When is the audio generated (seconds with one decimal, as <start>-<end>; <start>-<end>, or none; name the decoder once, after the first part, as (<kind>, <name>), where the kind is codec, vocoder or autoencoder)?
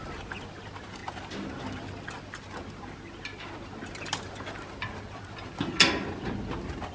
none